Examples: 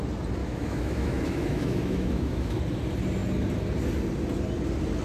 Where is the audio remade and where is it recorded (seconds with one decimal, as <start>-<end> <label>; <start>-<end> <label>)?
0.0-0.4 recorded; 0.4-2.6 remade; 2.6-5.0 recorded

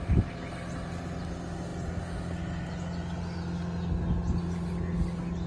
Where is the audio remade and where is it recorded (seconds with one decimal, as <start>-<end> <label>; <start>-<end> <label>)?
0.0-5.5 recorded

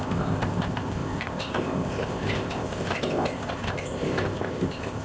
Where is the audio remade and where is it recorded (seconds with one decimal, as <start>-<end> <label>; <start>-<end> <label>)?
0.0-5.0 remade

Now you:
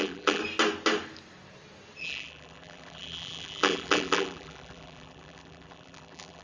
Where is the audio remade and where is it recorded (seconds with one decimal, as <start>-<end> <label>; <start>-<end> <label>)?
0.0-0.4 remade; 0.4-2.0 recorded; 2.0-6.4 remade